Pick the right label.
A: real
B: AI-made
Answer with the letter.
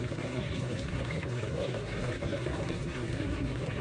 B